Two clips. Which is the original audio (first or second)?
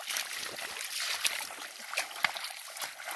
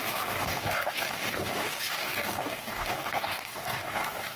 first